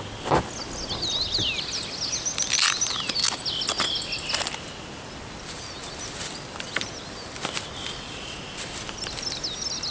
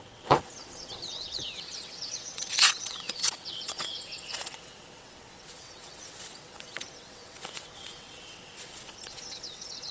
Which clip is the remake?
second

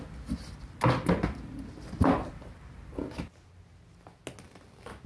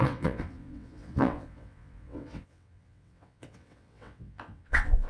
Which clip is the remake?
second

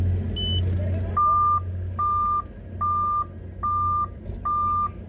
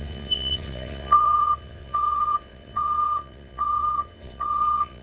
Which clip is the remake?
second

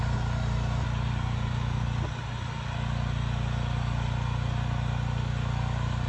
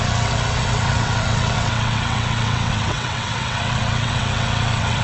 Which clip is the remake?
second